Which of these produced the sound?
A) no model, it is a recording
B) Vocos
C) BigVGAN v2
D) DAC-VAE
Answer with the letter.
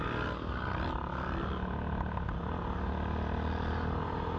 A